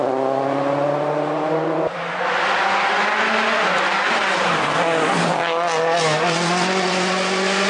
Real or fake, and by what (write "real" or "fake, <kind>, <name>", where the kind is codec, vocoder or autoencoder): real